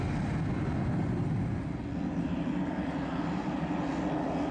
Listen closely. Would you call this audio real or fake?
real